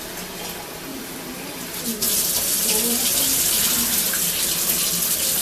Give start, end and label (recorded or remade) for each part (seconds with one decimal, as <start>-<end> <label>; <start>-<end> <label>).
0.0-0.9 recorded; 0.9-4.1 remade; 4.1-5.4 recorded